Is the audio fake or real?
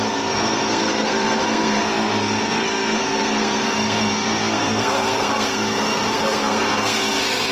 fake